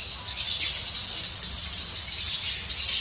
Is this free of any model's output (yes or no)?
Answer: yes